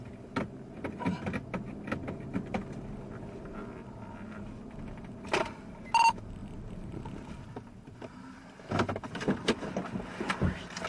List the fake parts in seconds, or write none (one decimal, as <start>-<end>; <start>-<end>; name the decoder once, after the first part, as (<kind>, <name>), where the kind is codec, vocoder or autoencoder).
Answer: none